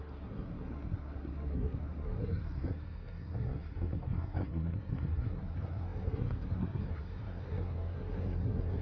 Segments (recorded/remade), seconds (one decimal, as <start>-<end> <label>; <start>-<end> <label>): 0.0-8.8 remade